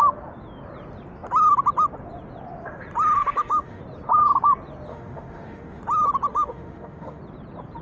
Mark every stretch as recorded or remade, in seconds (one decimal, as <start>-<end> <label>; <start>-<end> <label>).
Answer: 0.0-3.2 recorded; 3.2-3.8 remade; 3.8-4.9 recorded; 4.9-5.8 remade; 5.8-6.3 recorded; 6.3-7.2 remade; 7.2-7.8 recorded

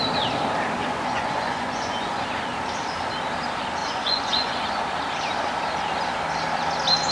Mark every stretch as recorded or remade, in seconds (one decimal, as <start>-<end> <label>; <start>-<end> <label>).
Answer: 0.0-0.8 recorded; 0.8-2.2 remade; 2.2-3.8 recorded; 3.8-4.8 remade; 4.8-7.1 recorded

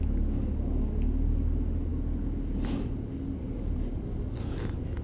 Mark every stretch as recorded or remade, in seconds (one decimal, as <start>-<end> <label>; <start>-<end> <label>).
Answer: 0.0-5.0 recorded

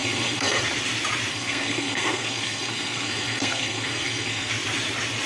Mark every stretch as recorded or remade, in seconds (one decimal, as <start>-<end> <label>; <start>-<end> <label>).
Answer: 0.0-0.6 remade; 0.6-1.3 recorded; 1.3-4.5 remade; 4.5-5.3 recorded

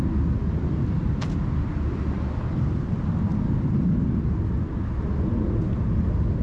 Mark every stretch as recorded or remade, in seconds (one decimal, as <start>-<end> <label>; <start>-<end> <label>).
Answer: 0.0-6.4 recorded

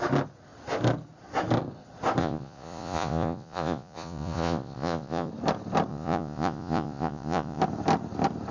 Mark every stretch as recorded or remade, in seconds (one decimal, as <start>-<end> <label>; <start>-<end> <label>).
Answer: 0.0-2.2 recorded; 2.2-5.3 remade; 5.3-5.9 recorded; 5.9-7.6 remade; 7.6-8.5 recorded